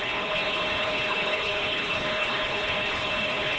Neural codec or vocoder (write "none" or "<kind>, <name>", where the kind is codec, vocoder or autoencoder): codec, HILCodec